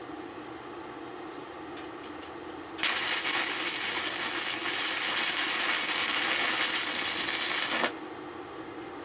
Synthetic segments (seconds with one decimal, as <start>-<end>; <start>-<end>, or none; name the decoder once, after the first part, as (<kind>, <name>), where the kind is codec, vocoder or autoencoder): none